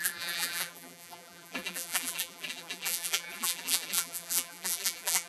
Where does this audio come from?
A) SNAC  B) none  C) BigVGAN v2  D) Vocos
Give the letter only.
C